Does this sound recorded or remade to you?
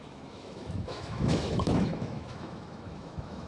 remade